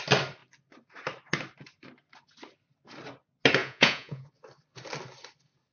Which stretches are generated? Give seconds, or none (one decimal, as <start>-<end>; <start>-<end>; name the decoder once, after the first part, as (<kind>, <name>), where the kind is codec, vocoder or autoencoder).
3.6-4.3 (vocoder, Vocos)

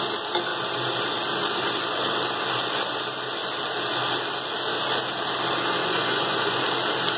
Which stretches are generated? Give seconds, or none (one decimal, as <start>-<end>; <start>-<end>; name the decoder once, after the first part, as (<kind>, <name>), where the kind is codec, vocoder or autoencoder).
5.8-6.6 (vocoder, Vocos)